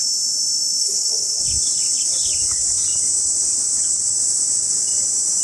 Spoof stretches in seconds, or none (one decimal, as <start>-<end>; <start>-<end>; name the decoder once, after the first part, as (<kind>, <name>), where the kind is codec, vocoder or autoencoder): 0.8-1.4 (codec, HILCodec)